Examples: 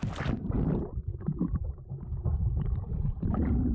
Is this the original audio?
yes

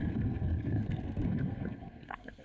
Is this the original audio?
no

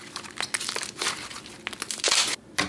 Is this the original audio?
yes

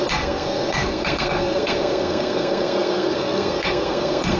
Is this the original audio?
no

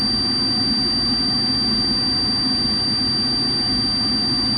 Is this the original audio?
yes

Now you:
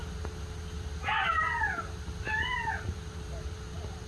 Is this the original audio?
yes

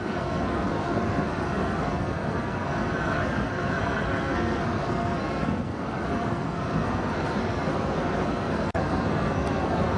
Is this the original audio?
no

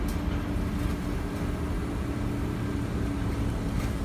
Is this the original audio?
yes